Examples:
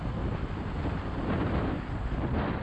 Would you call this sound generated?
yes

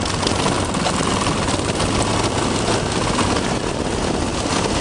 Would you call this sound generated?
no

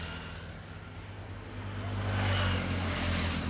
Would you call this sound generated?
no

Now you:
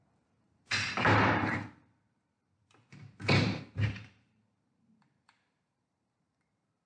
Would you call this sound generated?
yes